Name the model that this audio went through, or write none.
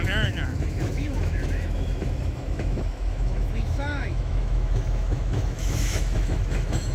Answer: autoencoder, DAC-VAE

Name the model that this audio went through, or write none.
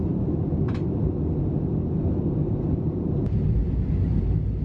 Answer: none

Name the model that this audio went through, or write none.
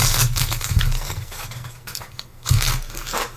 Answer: codec, SNAC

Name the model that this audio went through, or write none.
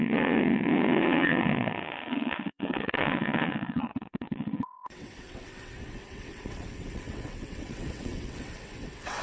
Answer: vocoder, WaveNeXt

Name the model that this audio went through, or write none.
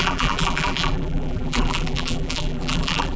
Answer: vocoder, BigVGAN v2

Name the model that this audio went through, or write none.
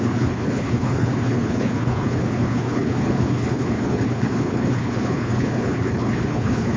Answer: codec, HILCodec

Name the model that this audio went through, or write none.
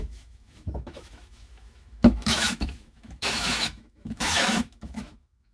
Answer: autoencoder, DAC-VAE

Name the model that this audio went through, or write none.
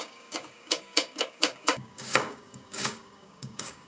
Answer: codec, DAC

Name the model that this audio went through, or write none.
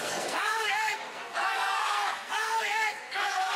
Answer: codec, SNAC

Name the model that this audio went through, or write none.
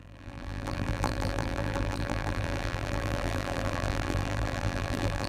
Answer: vocoder, BigVGAN v2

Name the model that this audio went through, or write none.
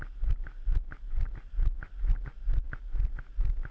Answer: none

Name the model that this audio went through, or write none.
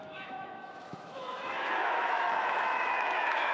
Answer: autoencoder, DAC-VAE